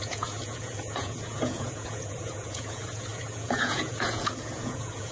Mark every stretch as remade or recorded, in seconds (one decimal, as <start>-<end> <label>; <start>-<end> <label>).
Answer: 0.0-5.1 remade